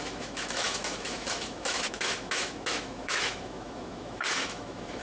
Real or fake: fake